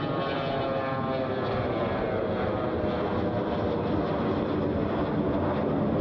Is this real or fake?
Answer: real